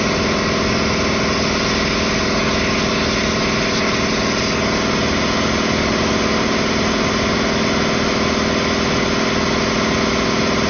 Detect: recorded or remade recorded